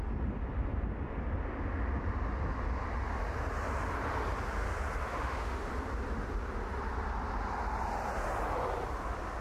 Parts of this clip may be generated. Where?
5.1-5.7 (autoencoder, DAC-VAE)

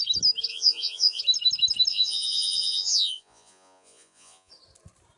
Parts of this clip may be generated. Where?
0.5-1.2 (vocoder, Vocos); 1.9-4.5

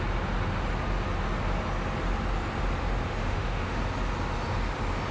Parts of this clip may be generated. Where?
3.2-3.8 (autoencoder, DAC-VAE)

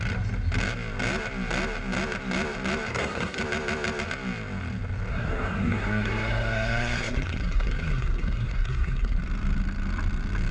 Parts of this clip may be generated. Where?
2.9-3.4 (codec, SNAC); 5.1-9.2